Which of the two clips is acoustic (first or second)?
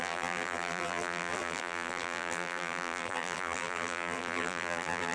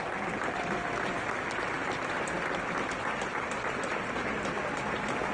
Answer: second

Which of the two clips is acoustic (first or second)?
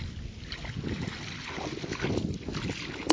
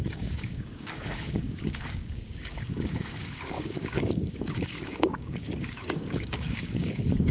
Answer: first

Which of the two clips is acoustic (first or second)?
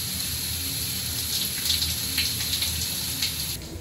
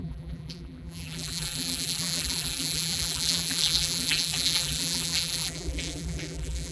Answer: first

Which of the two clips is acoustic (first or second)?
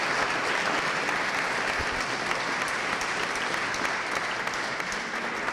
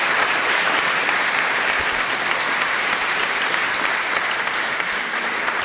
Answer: first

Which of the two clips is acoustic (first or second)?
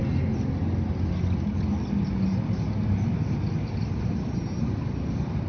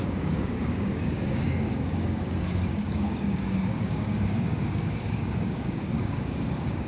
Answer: first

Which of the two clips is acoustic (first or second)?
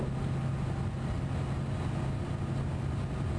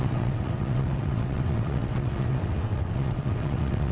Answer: first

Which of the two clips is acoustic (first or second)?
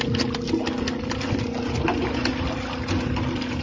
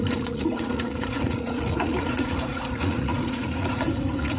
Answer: first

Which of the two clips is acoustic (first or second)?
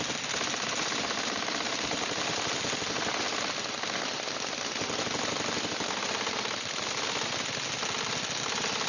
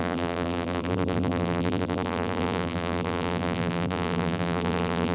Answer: first